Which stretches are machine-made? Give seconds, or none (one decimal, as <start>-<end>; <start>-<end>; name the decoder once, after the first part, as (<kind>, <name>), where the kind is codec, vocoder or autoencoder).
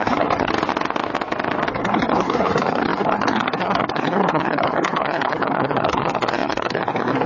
0.0-0.5 (codec, SNAC); 1.7-7.3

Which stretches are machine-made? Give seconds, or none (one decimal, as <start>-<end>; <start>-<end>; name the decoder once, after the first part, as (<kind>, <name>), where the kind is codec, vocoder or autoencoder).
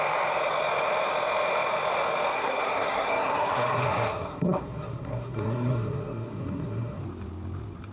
2.3-7.0 (codec, SNAC)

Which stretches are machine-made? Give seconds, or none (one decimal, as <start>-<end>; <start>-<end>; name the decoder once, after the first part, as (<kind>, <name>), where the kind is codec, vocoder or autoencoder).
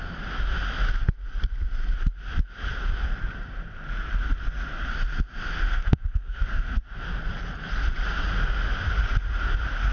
5.7-6.8 (codec, SNAC)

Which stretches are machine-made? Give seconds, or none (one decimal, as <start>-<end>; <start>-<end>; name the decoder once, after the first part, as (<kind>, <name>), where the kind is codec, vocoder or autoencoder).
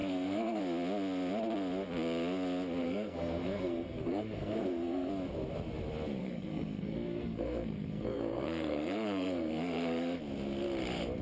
0.0-0.6 (codec, SNAC); 2.8-5.1; 6.2-10.2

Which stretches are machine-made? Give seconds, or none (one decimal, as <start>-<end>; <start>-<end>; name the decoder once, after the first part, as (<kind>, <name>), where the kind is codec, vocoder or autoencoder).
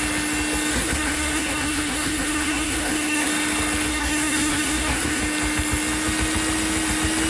0.7-3.3 (codec, SNAC); 3.9-5.2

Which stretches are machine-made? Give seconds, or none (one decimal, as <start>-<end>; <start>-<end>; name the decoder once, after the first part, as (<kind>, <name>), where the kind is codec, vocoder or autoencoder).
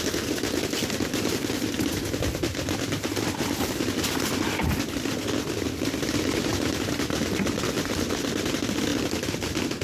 none